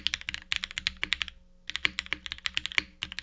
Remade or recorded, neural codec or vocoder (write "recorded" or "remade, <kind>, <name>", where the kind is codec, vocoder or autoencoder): recorded